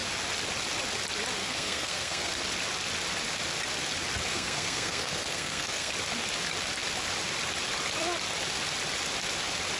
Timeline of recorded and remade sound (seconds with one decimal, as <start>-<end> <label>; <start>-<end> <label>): 0.0-1.4 recorded; 1.4-2.3 remade; 2.3-4.3 recorded; 4.3-5.9 remade; 5.9-9.8 recorded